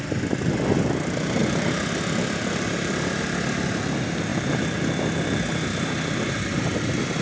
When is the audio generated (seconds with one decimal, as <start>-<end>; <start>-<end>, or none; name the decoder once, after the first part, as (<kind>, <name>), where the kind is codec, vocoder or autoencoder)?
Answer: 1.4-3.2 (vocoder, BigVGAN v2); 4.3-4.8